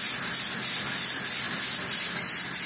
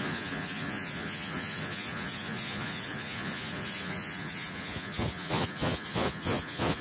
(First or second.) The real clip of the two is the first